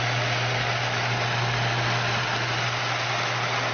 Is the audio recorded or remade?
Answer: recorded